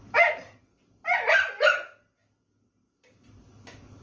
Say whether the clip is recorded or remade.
recorded